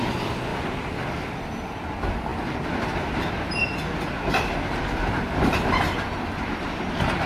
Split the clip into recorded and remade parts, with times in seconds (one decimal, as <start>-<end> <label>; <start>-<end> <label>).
0.0-0.5 recorded; 0.5-1.3 remade; 1.3-7.3 recorded